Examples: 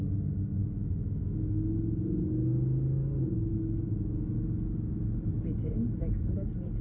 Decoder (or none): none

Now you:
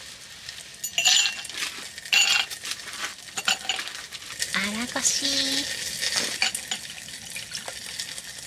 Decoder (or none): none